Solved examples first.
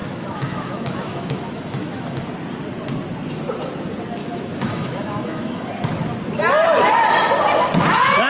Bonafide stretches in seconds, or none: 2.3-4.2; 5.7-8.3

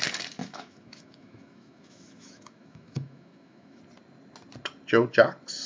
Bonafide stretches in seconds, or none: 0.0-0.4; 3.8-5.7

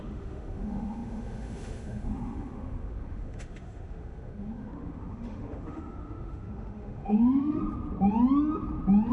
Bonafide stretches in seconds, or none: 7.6-9.1

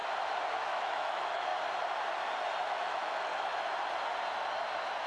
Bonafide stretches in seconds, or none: 0.0-0.5; 1.5-2.6; 3.3-5.1